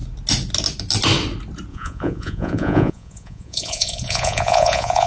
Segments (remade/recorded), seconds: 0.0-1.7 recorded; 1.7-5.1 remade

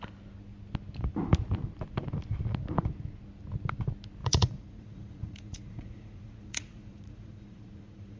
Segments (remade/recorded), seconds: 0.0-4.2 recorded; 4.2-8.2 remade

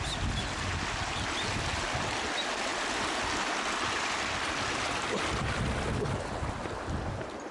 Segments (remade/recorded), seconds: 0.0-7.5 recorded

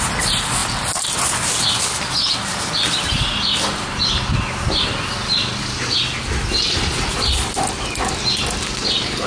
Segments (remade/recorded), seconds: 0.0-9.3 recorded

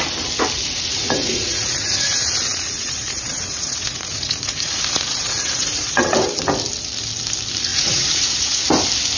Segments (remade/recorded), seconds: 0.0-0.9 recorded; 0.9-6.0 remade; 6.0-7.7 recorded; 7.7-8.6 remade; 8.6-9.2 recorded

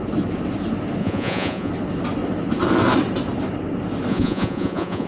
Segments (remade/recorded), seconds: 0.0-1.0 recorded; 1.0-1.7 remade; 1.7-4.1 recorded; 4.1-5.1 remade

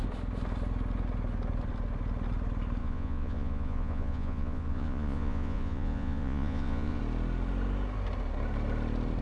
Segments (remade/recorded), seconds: 0.0-2.8 recorded; 2.8-7.0 remade; 7.0-9.2 recorded

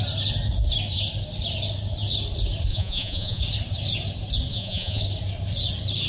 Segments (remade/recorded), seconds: 0.0-2.7 recorded; 2.7-3.4 remade; 3.4-4.5 recorded; 4.5-5.0 remade; 5.0-6.1 recorded